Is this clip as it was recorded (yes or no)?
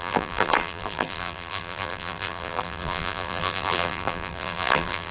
no